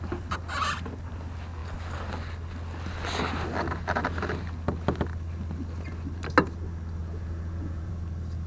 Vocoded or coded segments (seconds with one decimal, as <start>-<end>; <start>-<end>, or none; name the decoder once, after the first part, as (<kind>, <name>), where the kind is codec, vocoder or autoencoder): 7.0-7.9 (vocoder, Vocos)